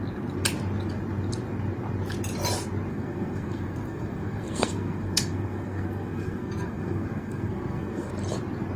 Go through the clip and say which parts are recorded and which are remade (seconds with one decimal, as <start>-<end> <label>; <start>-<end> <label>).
0.0-2.9 recorded; 2.9-8.1 remade; 8.1-8.8 recorded